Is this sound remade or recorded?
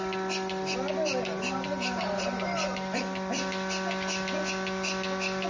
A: recorded